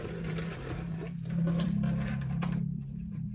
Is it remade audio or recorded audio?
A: remade